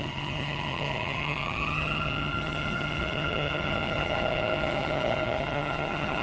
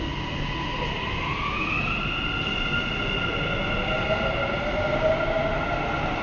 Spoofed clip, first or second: first